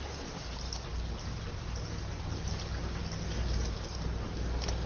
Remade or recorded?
recorded